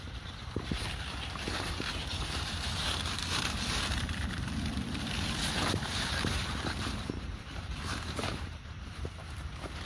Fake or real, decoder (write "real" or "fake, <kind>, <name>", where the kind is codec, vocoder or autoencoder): fake, vocoder, BigVGAN v2